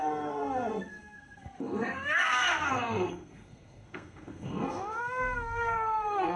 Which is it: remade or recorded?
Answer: remade